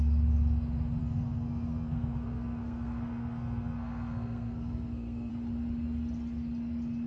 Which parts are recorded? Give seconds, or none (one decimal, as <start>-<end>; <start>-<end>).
0.0-1.0; 5.3-7.1